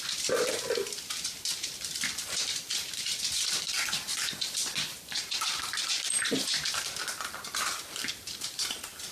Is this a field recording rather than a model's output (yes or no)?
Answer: no